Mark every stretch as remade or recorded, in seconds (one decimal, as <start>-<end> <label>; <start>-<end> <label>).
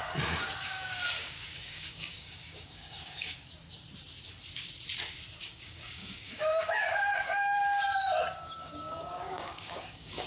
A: 0.0-0.6 recorded; 0.6-3.4 remade; 3.4-5.4 recorded; 5.4-10.3 remade